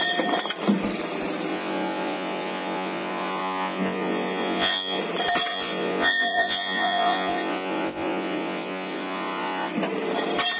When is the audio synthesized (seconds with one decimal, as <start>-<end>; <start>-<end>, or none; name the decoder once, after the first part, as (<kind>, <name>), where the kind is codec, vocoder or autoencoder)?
1.5-5.0 (vocoder, Vocos); 5.5-9.7